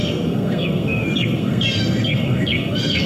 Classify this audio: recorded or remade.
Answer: remade